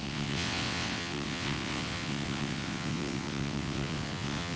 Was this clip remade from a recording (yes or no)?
yes